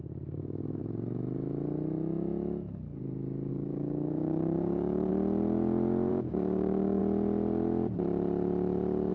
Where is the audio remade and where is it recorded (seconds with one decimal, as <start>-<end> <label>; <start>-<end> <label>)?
0.0-0.8 remade; 0.8-3.5 recorded; 3.5-5.1 remade; 5.1-6.1 recorded; 6.1-7.0 remade; 7.0-9.1 recorded